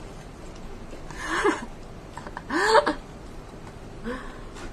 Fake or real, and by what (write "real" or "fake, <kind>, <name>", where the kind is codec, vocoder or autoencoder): real